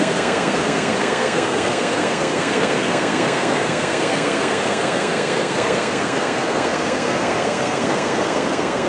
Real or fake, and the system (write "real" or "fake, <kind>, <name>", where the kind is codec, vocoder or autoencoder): fake, codec, SNAC